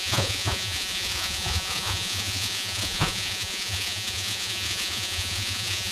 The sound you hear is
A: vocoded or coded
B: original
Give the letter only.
A